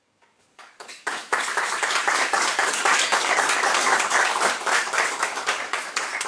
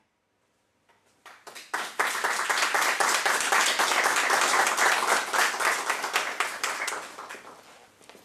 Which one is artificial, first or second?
first